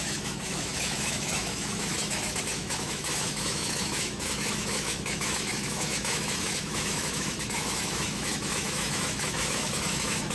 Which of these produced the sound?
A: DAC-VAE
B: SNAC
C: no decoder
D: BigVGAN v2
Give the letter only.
A